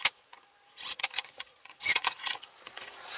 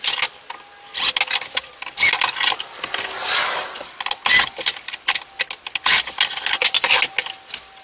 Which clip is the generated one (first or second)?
first